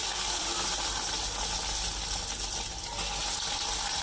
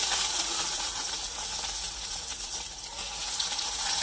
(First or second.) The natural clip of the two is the first